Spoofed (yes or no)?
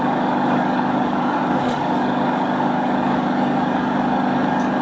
yes